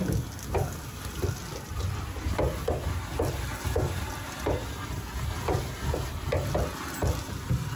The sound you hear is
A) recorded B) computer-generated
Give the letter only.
A